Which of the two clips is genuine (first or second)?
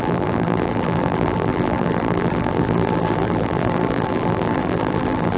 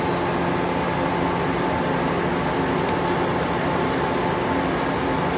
second